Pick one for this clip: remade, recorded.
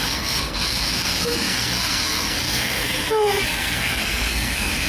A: remade